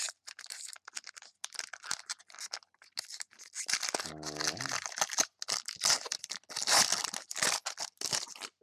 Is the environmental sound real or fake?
real